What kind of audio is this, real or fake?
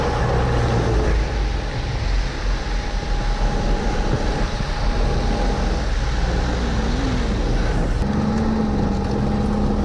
real